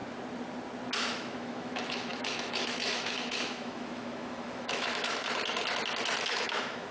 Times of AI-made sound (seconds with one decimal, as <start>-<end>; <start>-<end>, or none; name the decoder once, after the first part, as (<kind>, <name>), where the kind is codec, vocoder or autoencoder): 1.0-5.4 (autoencoder, DAC-VAE); 6.3-6.9